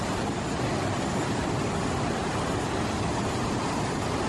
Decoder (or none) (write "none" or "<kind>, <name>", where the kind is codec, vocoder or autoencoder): none